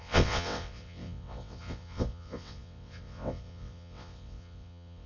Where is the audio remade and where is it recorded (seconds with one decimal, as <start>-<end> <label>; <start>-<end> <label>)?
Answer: 0.0-5.1 remade